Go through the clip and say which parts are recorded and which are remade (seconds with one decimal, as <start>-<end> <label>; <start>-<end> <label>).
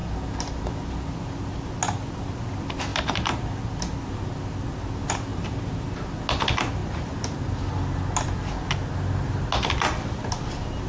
0.0-0.7 remade; 0.7-2.9 recorded; 2.9-3.4 remade; 3.4-5.3 recorded; 5.3-5.8 remade; 5.8-6.8 recorded; 6.8-7.7 remade; 7.7-10.9 recorded